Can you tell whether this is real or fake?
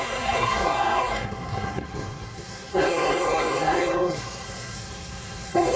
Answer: fake